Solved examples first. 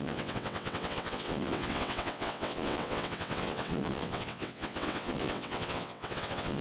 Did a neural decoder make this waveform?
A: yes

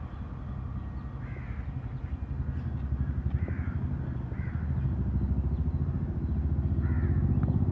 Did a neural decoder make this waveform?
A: no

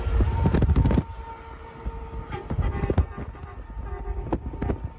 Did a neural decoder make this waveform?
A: no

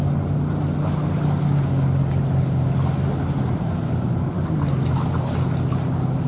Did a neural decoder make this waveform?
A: no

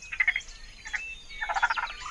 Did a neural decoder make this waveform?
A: no